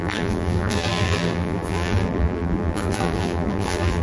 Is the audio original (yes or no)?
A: no